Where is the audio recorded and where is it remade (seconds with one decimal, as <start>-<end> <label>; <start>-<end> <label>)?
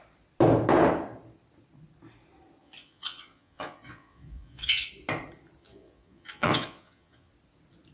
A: 0.0-2.6 recorded; 2.6-4.9 remade; 4.9-5.6 recorded; 5.6-7.3 remade; 7.3-7.9 recorded